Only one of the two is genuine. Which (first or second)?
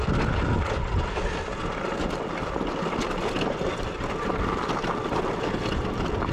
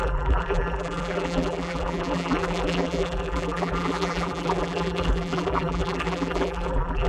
first